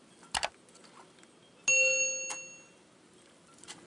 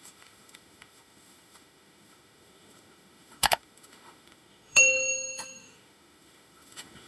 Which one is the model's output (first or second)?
second